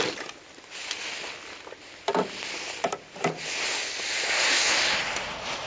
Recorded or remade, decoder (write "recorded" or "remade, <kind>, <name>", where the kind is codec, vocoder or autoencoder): recorded